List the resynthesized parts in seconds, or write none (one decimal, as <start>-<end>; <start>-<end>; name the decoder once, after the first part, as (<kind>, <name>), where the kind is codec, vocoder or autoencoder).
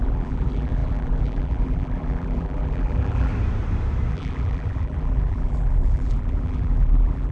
0.0-3.3 (vocoder, BigVGAN v2); 4.1-7.3